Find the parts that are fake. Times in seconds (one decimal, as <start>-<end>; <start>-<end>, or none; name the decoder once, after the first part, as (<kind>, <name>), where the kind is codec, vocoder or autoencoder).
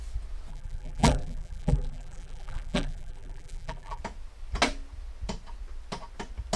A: 0.5-4.0 (vocoder, BigVGAN v2)